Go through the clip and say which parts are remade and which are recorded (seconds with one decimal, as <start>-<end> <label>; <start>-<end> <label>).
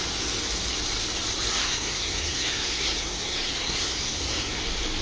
0.0-1.6 recorded; 1.6-4.6 remade; 4.6-5.0 recorded